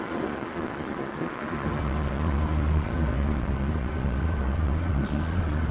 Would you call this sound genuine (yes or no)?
no